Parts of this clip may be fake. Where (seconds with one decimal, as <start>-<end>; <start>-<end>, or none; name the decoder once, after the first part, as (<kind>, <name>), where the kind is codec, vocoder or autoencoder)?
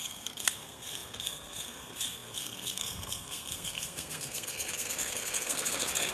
0.0-6.1 (codec, SNAC)